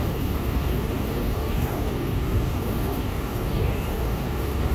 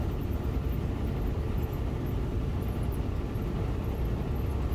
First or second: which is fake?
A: first